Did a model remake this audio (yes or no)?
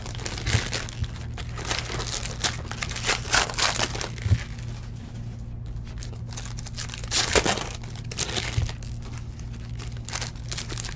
no